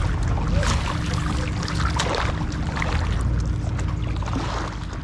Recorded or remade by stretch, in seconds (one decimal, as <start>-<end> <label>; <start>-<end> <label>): 0.0-5.0 recorded